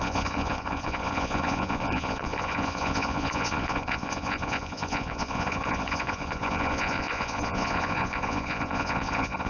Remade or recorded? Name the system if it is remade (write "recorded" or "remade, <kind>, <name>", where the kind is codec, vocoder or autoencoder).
remade, vocoder, Vocos